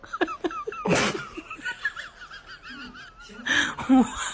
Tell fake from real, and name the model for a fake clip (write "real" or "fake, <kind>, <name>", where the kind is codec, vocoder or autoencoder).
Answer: real